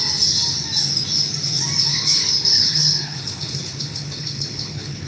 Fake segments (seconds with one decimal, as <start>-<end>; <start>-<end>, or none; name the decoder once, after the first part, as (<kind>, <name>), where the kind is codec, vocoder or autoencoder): 1.9-5.1 (codec, HILCodec)